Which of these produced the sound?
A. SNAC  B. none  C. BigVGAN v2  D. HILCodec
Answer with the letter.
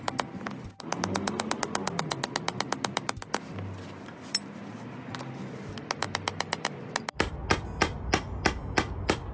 B